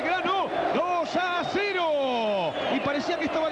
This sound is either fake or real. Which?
real